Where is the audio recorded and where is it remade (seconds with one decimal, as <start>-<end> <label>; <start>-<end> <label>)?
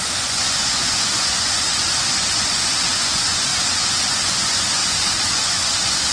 0.0-6.1 remade